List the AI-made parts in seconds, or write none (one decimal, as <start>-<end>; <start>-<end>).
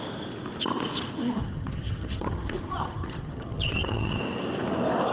1.4-4.2